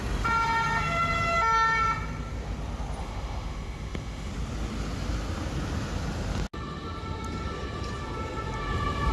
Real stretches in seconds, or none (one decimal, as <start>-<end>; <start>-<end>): 0.0-3.0; 4.3-9.1

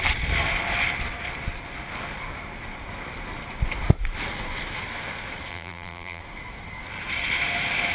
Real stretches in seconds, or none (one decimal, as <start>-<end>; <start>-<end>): 0.0-5.5; 6.2-7.9

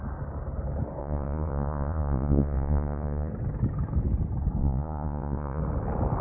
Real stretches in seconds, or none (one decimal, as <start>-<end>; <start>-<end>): 0.0-1.0; 3.3-4.6; 5.6-6.2

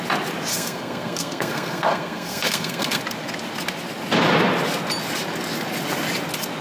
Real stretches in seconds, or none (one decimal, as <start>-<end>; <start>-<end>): 0.0-0.5; 3.0-6.6